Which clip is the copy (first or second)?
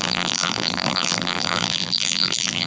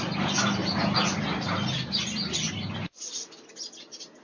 first